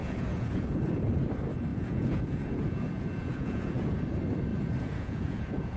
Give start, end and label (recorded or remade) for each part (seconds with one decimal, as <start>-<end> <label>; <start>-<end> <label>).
0.0-1.1 remade; 1.1-1.7 recorded; 1.7-4.0 remade; 4.0-4.5 recorded; 4.5-5.8 remade